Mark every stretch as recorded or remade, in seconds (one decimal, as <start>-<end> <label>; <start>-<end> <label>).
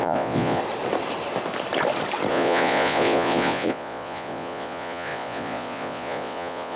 0.0-0.6 remade; 0.6-2.3 recorded; 2.3-6.8 remade